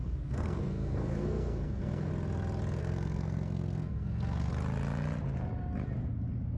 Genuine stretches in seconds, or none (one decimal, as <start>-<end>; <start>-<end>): 2.1-2.8; 4.5-6.6